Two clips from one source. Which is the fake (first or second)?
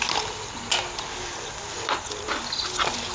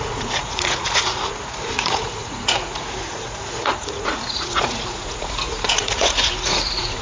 second